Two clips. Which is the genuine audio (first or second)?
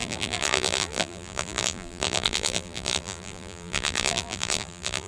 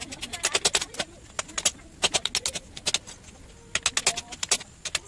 second